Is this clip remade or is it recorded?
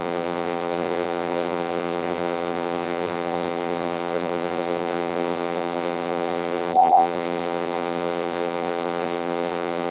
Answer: remade